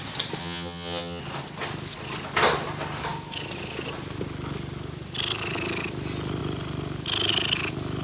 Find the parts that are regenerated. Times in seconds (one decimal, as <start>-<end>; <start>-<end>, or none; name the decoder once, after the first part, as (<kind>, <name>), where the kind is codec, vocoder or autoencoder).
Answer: 0.4-1.2 (vocoder, HiFi-GAN)